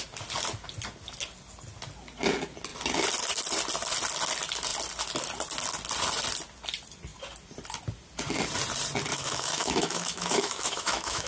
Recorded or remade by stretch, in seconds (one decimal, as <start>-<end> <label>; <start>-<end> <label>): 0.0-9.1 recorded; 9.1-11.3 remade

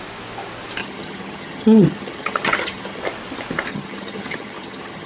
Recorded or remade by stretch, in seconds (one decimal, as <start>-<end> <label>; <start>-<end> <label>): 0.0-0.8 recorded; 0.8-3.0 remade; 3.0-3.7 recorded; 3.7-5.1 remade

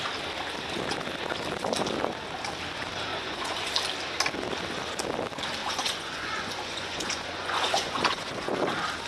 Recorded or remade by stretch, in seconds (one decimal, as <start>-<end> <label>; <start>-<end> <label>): 0.0-3.1 recorded; 3.1-3.7 remade; 3.7-5.6 recorded; 5.6-8.5 remade; 8.5-9.1 recorded

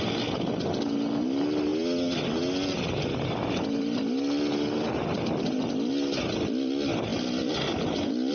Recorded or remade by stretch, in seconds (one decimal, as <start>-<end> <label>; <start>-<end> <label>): 0.0-8.3 recorded